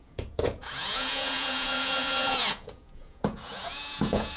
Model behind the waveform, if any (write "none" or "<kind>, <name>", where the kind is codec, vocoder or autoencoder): vocoder, Vocos